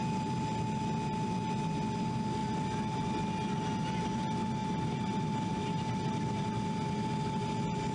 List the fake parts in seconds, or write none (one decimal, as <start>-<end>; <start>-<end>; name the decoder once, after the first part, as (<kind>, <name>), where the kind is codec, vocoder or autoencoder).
none